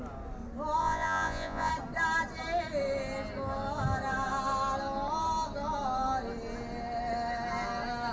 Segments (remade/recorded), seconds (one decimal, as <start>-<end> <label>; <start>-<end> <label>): 0.0-0.8 recorded; 0.8-1.7 remade; 1.7-8.1 recorded